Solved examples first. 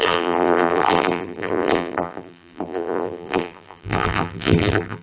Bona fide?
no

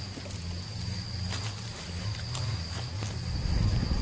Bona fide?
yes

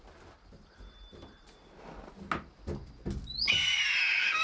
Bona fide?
yes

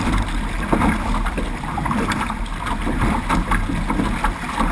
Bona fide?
yes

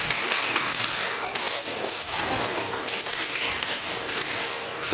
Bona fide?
no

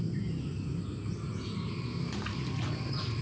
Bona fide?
yes